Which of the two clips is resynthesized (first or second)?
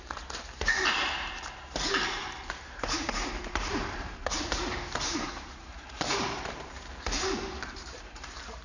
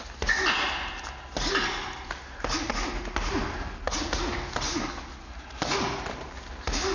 first